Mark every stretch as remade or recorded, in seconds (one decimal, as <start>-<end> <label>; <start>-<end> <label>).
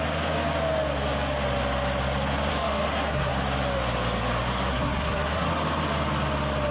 0.0-2.5 recorded; 2.5-3.3 remade; 3.3-4.7 recorded; 4.7-5.5 remade; 5.5-6.7 recorded